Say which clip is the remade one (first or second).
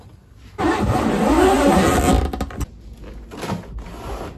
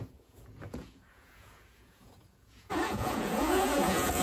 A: second